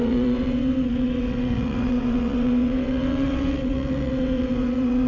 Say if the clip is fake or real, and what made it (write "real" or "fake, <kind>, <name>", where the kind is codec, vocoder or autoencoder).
fake, vocoder, WaveNeXt